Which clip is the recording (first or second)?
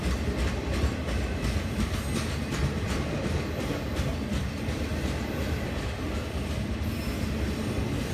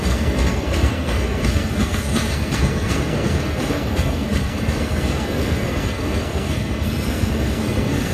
first